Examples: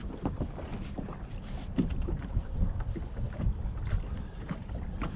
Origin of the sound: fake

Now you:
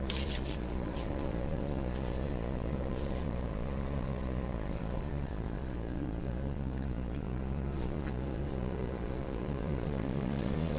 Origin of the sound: fake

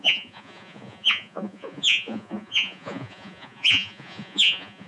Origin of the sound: fake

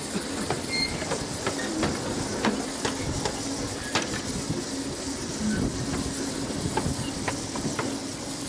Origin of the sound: real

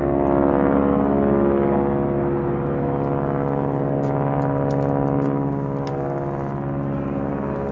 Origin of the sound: real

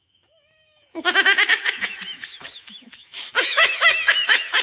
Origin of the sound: fake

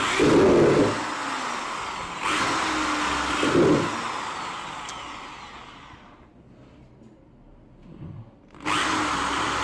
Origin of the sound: real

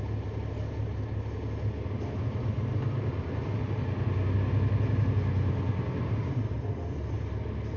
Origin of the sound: real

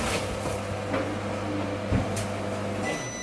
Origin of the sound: real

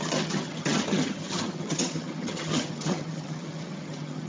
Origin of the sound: fake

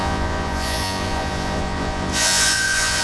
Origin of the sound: fake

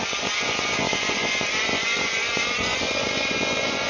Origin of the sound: fake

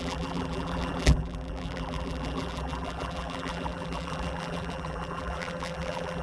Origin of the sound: fake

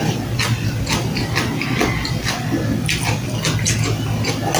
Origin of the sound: real